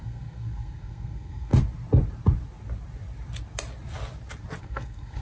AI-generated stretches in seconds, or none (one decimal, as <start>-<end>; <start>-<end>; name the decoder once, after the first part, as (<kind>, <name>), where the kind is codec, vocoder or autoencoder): 0.0-1.5 (codec, SNAC); 4.6-5.2